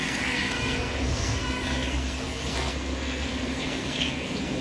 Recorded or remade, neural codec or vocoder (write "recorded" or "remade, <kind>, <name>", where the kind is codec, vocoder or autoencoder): remade, codec, SNAC